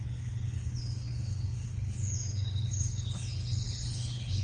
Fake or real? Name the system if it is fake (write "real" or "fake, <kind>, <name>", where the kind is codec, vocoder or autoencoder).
fake, codec, HILCodec